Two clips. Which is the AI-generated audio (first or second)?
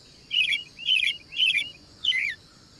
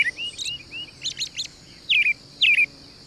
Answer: first